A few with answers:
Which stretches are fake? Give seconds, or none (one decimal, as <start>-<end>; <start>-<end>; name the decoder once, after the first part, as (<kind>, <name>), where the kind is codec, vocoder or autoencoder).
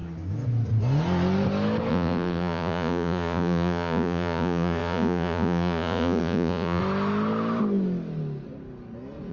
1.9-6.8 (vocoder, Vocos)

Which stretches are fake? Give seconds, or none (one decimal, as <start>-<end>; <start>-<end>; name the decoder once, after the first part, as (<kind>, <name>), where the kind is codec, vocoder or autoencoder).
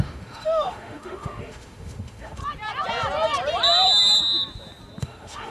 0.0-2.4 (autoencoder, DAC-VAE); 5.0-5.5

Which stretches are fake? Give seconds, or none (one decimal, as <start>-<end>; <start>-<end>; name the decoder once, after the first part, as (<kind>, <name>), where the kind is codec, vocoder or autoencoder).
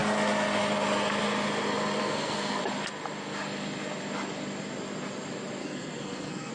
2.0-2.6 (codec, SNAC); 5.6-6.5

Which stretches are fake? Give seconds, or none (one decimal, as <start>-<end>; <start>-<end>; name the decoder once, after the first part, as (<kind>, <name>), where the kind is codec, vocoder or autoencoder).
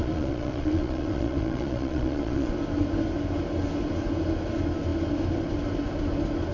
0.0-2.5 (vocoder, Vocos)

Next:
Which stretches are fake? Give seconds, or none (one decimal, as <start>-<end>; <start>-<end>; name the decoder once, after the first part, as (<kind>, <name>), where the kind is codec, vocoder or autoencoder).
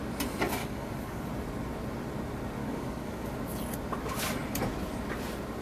0.6-1.3 (codec, DAC); 2.6-3.4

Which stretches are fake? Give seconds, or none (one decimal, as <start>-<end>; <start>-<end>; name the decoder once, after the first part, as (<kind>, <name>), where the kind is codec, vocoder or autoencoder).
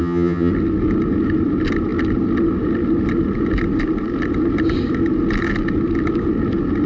0.0-0.5 (vocoder, HiFi-GAN)